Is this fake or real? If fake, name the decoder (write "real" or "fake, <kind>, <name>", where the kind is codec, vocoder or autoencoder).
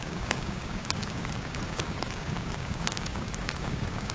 fake, codec, DAC